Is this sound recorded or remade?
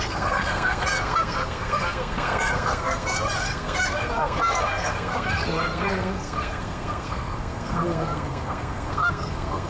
remade